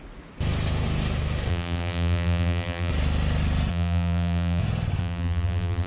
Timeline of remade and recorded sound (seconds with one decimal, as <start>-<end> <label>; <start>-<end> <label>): 0.0-1.5 recorded; 1.5-2.9 remade; 2.9-3.7 recorded; 3.7-4.6 remade; 4.6-5.0 recorded; 5.0-5.9 remade